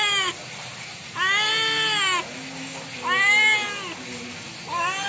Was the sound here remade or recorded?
recorded